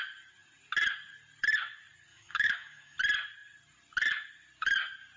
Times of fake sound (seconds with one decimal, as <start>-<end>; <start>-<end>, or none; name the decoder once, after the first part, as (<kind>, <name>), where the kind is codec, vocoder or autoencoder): 2.1-3.0 (autoencoder, DAC-VAE)